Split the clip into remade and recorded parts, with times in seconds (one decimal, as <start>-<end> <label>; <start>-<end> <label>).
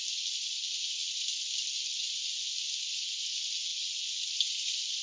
0.0-5.0 recorded